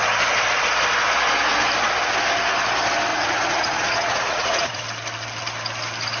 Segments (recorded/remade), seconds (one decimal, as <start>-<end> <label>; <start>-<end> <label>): 0.0-3.1 recorded; 3.1-4.8 remade; 4.8-6.2 recorded